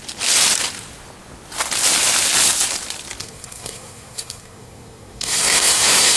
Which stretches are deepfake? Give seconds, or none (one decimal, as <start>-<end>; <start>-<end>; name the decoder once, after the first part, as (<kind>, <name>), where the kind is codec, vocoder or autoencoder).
3.2-6.2 (codec, SNAC)